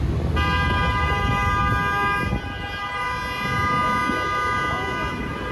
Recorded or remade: recorded